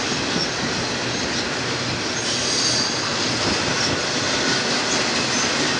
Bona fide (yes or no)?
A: yes